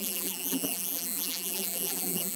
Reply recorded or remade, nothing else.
remade